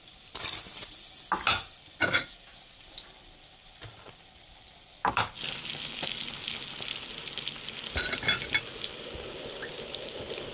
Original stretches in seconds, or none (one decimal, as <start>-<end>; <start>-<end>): 0.0-10.5